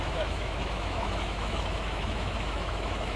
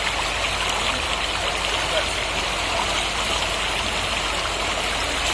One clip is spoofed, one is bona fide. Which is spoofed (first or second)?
first